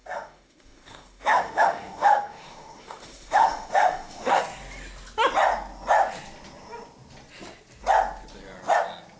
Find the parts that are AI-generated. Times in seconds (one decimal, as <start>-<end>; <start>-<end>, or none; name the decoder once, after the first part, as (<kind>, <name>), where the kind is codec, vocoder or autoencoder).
0.0-4.4 (autoencoder, DAC-VAE)